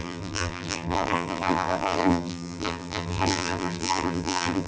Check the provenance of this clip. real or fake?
fake